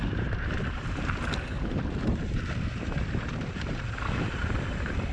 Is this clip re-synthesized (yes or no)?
yes